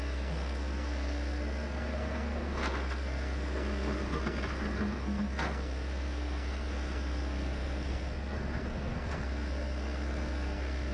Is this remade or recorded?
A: remade